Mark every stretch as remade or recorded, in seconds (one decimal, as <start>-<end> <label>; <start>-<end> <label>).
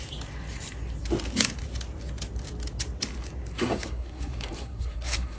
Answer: 0.0-3.6 recorded; 3.6-5.4 remade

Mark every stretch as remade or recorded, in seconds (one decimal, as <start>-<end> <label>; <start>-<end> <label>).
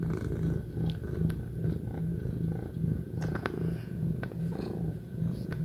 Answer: 0.0-2.1 recorded; 2.1-5.6 remade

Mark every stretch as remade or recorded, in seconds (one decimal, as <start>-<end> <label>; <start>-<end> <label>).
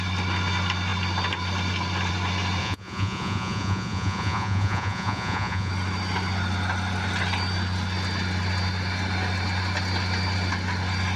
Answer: 0.0-2.6 recorded; 2.6-5.7 remade; 5.7-11.2 recorded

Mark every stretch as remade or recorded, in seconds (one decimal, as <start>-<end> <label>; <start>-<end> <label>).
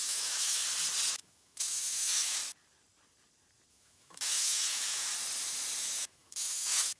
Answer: 0.0-0.6 remade; 0.6-1.1 recorded; 1.1-2.4 remade; 2.4-3.7 recorded; 3.7-5.1 remade; 5.1-5.8 recorded; 5.8-7.0 remade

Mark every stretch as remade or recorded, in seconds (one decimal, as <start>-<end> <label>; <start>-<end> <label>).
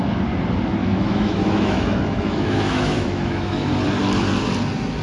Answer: 0.0-0.8 recorded; 0.8-3.7 remade; 3.7-5.0 recorded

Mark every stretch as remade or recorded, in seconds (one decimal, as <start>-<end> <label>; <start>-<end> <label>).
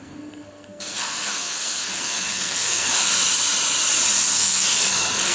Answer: 0.0-3.1 remade; 3.1-4.3 recorded; 4.3-5.3 remade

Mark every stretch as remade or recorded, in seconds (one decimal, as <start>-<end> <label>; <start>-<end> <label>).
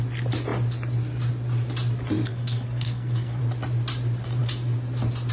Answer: 0.0-2.3 recorded; 2.3-3.4 remade; 3.4-5.3 recorded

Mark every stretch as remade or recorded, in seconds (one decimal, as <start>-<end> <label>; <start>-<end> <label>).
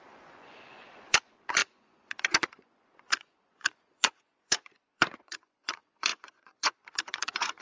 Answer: 0.0-7.6 remade